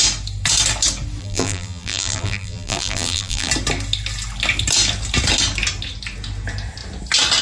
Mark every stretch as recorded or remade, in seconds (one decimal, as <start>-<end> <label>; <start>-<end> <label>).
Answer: 0.0-1.2 recorded; 1.2-3.5 remade; 3.5-7.4 recorded